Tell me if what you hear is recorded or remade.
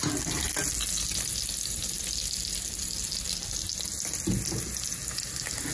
recorded